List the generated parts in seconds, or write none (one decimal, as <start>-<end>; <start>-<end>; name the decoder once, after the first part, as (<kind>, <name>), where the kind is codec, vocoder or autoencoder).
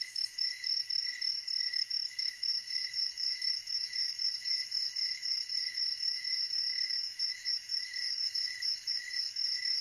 0.0-1.0 (autoencoder, DAC-VAE); 1.6-9.8